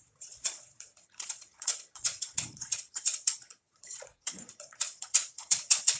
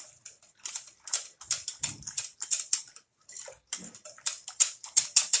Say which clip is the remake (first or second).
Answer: first